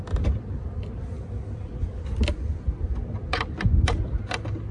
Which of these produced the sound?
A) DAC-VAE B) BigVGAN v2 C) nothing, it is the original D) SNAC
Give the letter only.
C